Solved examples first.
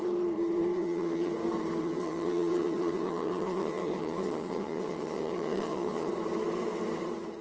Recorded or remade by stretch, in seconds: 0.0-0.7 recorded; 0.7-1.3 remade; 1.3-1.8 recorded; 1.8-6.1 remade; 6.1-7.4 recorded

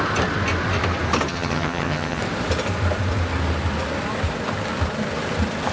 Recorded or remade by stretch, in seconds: 0.0-1.3 recorded; 1.3-2.2 remade; 2.2-5.7 recorded

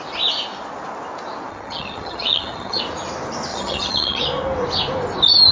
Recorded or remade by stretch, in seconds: 0.0-1.5 recorded; 1.5-2.8 remade; 2.8-3.5 recorded; 3.5-4.2 remade; 4.2-5.5 recorded